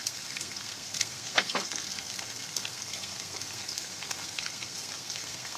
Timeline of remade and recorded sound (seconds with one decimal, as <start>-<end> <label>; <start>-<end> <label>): 0.0-5.6 remade